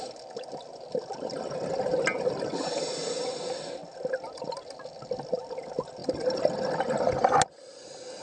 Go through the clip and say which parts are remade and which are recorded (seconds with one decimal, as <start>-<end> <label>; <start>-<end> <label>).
0.0-8.2 recorded